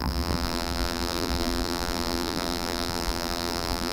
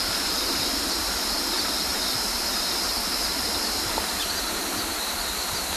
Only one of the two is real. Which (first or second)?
second